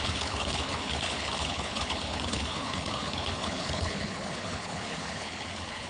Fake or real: fake